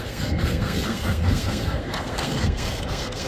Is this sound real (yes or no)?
no